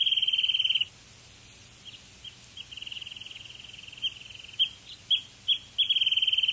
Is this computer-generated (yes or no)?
no